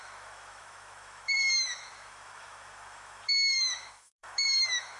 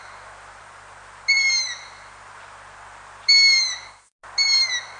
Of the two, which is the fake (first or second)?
first